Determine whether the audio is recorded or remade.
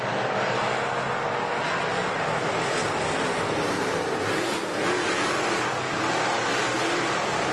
recorded